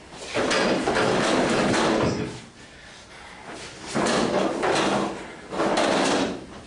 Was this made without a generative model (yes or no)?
yes